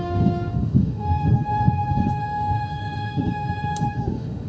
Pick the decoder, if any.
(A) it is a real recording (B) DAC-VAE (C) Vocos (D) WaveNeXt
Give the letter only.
B